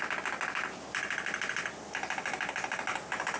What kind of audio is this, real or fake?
real